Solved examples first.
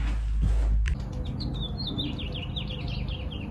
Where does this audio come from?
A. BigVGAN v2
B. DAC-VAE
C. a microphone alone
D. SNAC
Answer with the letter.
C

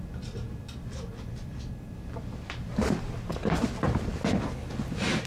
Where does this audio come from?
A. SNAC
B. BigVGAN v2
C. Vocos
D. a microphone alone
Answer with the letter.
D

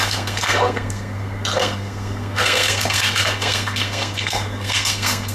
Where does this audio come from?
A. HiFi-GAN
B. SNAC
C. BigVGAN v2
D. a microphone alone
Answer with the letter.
B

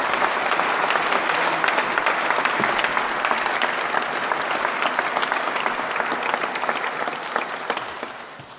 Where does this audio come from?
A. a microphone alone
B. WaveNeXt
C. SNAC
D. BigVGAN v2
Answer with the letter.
A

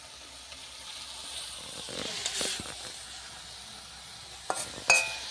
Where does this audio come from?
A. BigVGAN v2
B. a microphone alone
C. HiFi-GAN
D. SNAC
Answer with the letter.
B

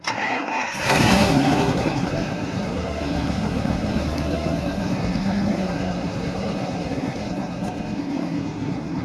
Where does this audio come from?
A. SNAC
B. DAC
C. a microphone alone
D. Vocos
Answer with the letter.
A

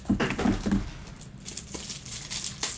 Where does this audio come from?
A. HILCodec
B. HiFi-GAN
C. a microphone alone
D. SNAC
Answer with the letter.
C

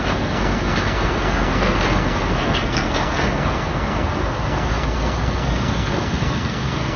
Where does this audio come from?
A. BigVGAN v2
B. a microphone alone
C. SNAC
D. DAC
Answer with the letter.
C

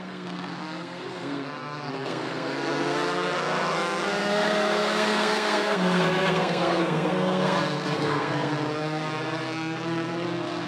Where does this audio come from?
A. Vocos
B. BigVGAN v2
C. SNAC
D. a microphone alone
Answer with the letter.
C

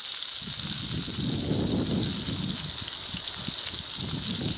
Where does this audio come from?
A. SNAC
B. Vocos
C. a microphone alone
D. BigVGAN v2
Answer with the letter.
C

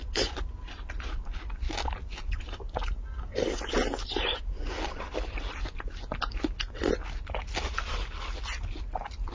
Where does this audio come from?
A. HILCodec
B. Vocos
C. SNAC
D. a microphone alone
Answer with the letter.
D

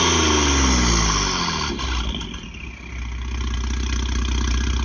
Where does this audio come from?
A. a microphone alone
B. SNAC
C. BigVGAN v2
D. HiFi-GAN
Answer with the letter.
A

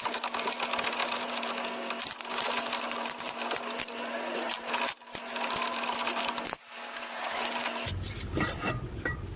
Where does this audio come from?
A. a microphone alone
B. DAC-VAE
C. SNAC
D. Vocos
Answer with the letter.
A